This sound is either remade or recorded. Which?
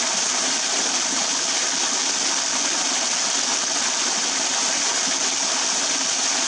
recorded